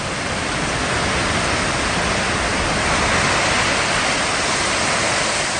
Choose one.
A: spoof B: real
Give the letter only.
B